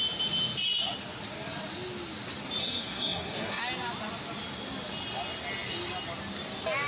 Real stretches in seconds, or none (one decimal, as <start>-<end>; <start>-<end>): 0.0-2.6; 3.6-6.9

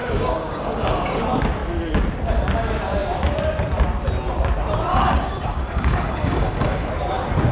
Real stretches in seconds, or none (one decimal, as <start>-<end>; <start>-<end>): 1.2-4.9; 6.9-7.5

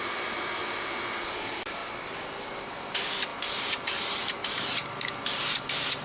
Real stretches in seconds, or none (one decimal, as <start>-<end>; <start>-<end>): 1.8-2.4

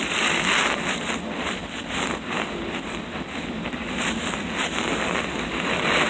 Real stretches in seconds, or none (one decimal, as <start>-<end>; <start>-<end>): 0.0-6.1